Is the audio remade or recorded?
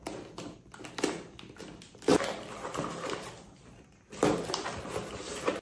recorded